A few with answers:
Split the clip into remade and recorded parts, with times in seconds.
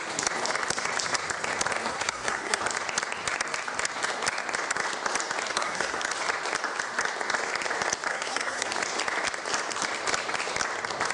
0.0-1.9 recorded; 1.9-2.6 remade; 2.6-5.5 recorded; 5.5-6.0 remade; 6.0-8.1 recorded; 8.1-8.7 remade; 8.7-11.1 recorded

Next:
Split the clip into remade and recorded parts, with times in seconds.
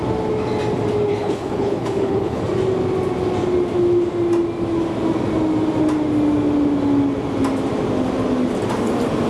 0.0-1.1 recorded; 1.1-2.4 remade; 2.4-9.3 recorded